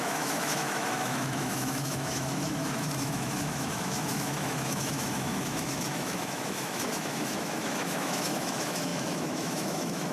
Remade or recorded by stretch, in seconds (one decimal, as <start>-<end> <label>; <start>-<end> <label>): 0.0-10.1 remade